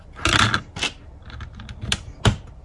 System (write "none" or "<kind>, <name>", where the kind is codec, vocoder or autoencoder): none